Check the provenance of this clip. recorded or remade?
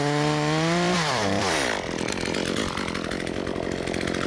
remade